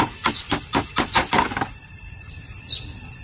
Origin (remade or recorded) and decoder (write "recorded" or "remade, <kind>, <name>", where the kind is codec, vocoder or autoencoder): recorded